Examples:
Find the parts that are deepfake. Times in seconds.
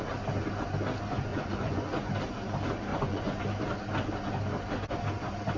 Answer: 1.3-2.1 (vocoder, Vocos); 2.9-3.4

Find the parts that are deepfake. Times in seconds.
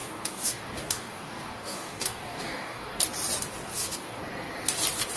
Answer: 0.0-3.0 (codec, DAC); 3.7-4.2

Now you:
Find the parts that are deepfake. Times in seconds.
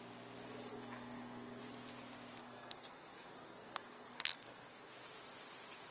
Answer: 0.7-1.6 (codec, SNAC); 2.4-4.9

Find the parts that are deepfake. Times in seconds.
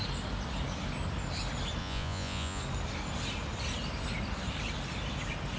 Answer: 1.8-2.6 (vocoder, Vocos)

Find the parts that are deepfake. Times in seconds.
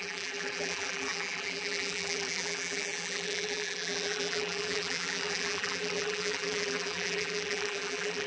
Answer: 0.0-8.3 (vocoder, BigVGAN v2)